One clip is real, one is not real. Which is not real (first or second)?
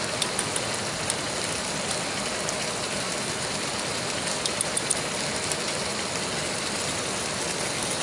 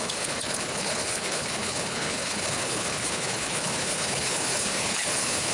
second